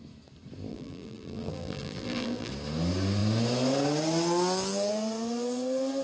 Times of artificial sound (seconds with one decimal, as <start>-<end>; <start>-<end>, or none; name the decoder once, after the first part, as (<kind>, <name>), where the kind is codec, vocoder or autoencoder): 0.7-2.5 (vocoder, BigVGAN v2)